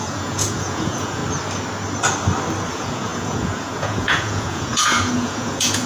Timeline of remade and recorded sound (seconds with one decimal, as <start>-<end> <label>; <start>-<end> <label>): 0.0-1.2 remade; 1.2-2.7 recorded; 2.7-5.9 remade